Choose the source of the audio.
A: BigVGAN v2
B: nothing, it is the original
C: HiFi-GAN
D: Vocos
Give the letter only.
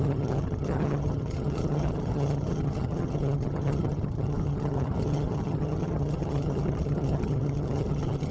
C